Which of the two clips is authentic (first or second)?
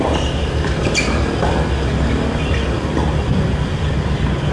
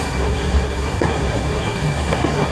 first